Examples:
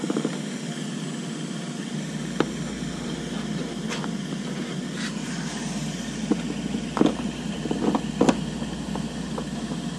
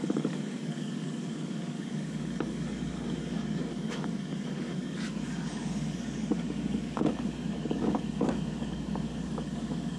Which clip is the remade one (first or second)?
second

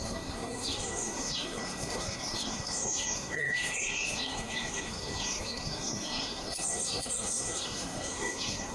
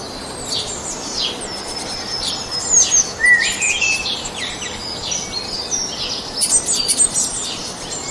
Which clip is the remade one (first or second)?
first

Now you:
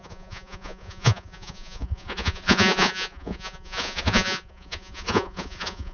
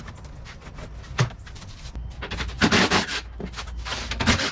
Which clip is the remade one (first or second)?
first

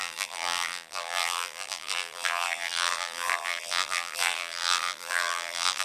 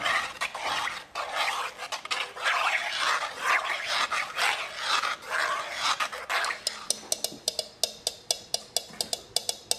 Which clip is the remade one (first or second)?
first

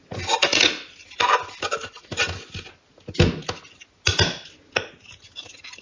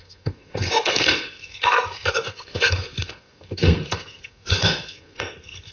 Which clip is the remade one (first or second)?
second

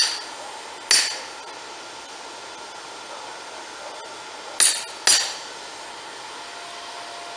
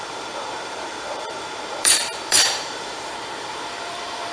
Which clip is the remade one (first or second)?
second